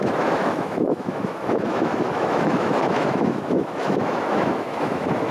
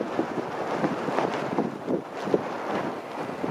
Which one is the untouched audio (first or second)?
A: second